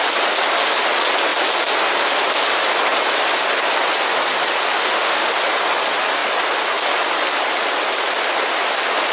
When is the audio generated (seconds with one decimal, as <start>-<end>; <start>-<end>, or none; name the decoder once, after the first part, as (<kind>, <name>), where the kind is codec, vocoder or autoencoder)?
4.7-5.3 (autoencoder, DAC-VAE)